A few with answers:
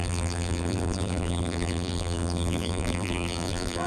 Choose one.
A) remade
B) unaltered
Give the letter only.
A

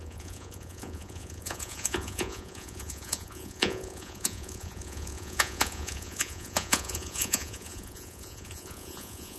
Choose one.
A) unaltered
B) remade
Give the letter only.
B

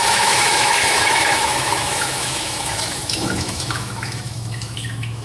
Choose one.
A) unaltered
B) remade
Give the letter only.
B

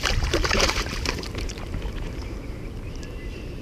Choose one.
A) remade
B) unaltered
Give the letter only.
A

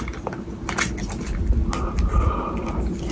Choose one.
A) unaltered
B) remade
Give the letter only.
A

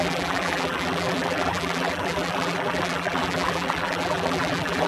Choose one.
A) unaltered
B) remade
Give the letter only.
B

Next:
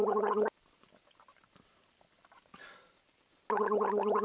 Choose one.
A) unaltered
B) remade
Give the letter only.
A